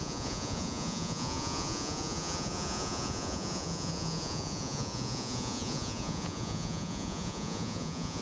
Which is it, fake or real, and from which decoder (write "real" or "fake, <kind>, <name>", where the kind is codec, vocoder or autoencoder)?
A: fake, vocoder, Vocos